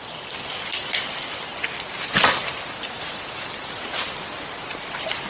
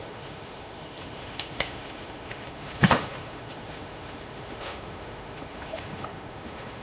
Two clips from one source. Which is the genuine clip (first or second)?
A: first